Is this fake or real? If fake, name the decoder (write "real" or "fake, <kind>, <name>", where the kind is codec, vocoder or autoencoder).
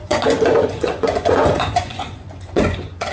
fake, vocoder, Vocos